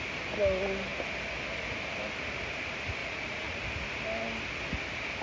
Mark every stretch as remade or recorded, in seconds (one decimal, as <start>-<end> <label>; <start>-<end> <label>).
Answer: 0.0-3.0 recorded; 3.0-3.6 remade; 3.6-5.2 recorded